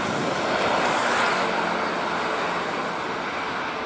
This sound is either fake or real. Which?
real